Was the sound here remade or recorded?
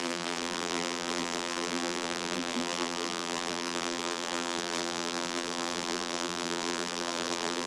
remade